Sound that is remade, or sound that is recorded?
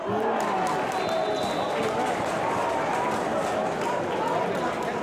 recorded